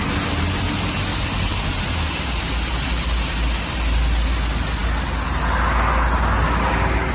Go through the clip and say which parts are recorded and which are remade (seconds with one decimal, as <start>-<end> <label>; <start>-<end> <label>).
0.0-1.1 recorded; 1.1-2.5 remade; 2.5-7.1 recorded

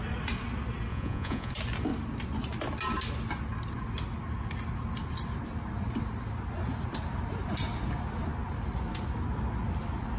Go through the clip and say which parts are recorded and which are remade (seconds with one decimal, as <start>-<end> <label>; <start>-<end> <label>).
0.0-0.9 recorded; 0.9-1.5 remade; 1.5-10.2 recorded